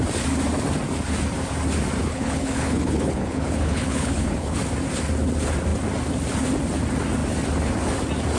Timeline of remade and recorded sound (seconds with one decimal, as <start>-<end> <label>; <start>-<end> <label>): 0.0-2.0 recorded; 2.0-4.6 remade; 4.6-8.4 recorded